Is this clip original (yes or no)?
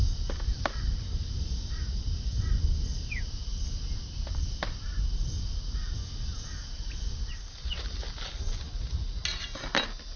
yes